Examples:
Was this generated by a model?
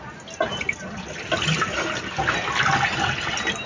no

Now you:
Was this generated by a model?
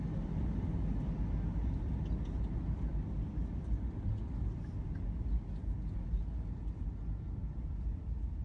no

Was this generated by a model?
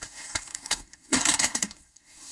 yes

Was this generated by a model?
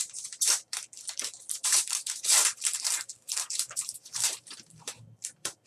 yes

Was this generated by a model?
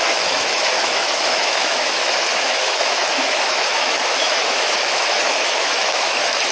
yes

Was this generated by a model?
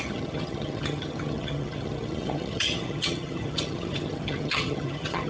yes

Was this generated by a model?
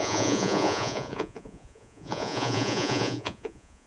yes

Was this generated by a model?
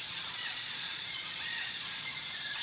yes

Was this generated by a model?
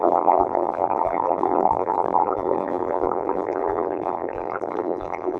yes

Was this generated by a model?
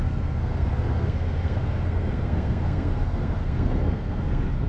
yes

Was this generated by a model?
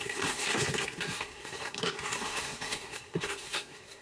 yes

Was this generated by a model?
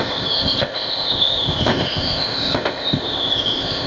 yes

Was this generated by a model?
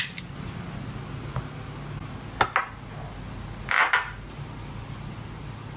no